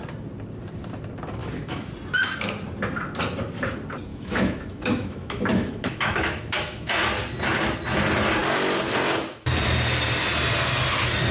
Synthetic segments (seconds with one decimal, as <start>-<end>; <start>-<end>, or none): 1.4-1.9; 4.1-6.9